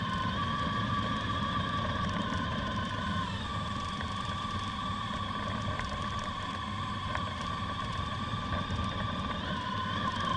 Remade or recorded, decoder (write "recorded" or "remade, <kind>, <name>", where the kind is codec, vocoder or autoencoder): remade, vocoder, BigVGAN v2